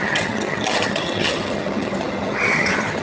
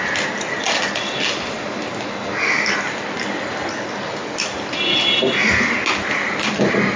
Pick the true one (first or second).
second